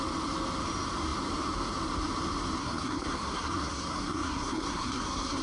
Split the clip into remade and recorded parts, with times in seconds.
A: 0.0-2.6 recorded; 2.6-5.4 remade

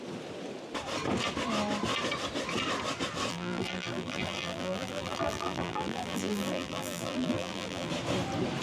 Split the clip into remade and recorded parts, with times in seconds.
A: 0.0-3.3 recorded; 3.3-7.9 remade; 7.9-8.6 recorded

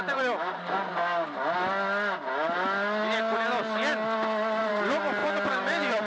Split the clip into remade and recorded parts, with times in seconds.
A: 0.0-0.9 remade; 0.9-4.6 recorded; 4.6-6.1 remade

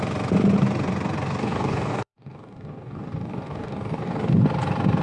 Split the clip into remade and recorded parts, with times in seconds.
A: 0.0-1.4 recorded; 1.4-4.4 remade; 4.4-5.0 recorded